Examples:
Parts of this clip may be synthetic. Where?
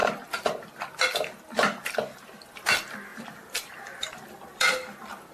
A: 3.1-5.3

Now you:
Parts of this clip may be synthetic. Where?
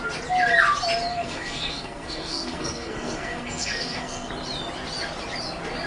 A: 1.1-4.3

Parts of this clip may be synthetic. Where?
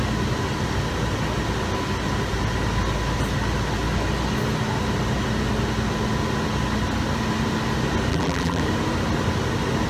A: 8.1-8.6